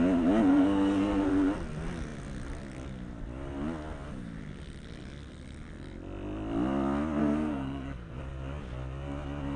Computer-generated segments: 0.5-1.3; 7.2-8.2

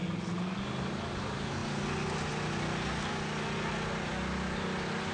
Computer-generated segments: none